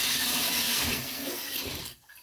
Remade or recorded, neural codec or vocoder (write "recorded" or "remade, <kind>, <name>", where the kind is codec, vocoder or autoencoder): remade, codec, SNAC